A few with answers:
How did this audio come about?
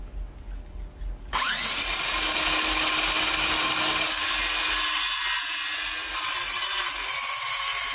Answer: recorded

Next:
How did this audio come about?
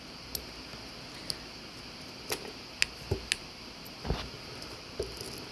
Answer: recorded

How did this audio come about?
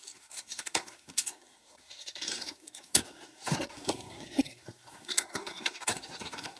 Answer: remade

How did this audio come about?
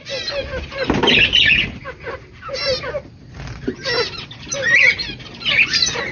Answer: recorded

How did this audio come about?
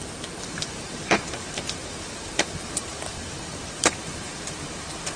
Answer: remade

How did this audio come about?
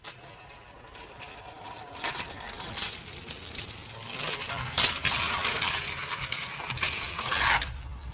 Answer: recorded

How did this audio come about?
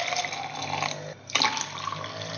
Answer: recorded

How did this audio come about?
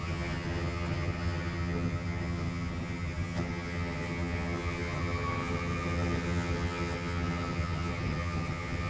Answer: remade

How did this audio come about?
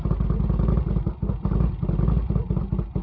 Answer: recorded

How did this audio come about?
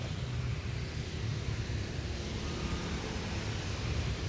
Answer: recorded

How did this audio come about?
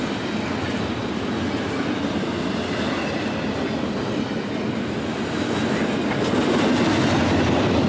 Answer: recorded